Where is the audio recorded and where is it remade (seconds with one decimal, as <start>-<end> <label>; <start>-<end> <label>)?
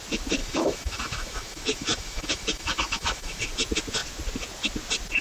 0.0-0.4 recorded; 0.4-3.5 remade; 3.5-5.2 recorded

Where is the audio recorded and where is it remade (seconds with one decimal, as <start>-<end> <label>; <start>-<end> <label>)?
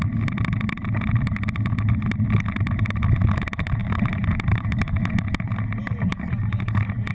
0.0-3.8 recorded; 3.8-5.1 remade; 5.1-7.1 recorded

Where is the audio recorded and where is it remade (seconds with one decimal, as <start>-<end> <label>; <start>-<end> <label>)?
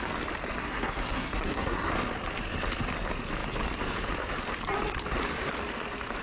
0.0-0.6 recorded; 0.6-1.9 remade; 1.9-6.2 recorded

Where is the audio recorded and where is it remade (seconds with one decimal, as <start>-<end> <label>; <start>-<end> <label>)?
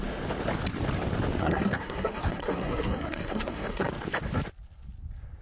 0.0-1.4 recorded; 1.4-3.9 remade; 3.9-5.4 recorded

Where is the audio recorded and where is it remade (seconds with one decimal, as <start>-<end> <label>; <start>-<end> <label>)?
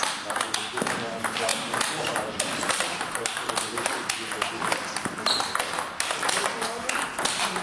0.0-1.5 recorded; 1.5-3.5 remade; 3.5-7.6 recorded